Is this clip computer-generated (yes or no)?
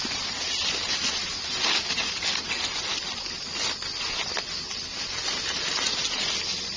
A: no